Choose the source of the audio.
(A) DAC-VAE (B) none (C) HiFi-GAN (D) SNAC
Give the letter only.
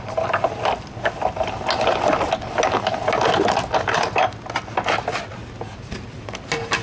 B